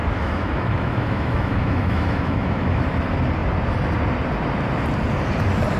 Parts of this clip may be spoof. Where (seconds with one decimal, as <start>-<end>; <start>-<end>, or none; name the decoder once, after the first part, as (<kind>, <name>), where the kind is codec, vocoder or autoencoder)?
0.0-2.8 (autoencoder, DAC-VAE)